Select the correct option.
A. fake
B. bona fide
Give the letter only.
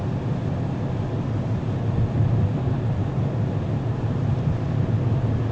B